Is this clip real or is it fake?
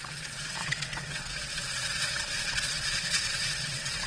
fake